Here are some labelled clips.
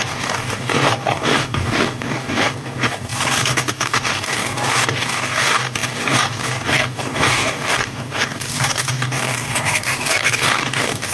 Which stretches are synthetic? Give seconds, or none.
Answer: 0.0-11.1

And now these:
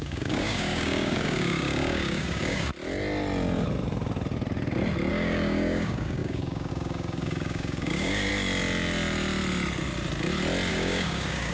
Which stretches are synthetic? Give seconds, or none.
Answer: 0.0-2.7; 5.1-8.3; 10.7-11.5

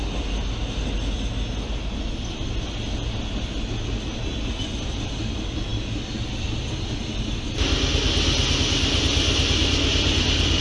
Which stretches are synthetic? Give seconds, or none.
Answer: none

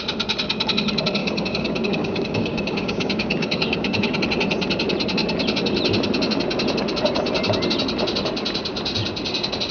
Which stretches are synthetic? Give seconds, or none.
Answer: 1.2-4.2

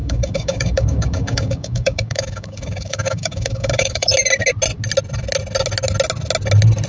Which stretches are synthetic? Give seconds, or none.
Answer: 0.0-4.1

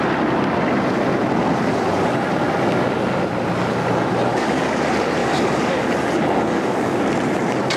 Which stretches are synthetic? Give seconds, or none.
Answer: 4.3-4.8; 5.2-7.1

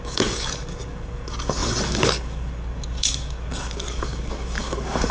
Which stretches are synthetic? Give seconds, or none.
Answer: 0.0-5.1